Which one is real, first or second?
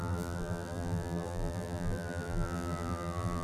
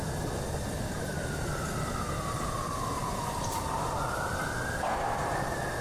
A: second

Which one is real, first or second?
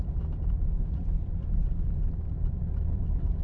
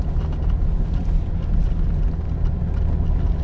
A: second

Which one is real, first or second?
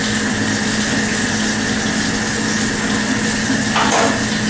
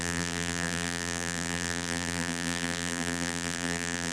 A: first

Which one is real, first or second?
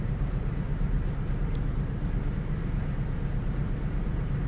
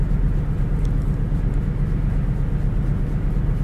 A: second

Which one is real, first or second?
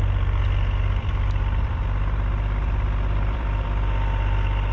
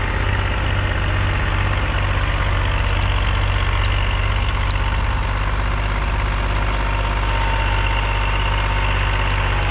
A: second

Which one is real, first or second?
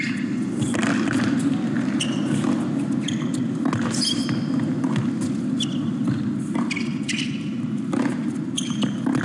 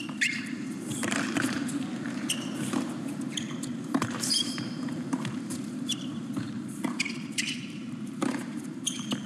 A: first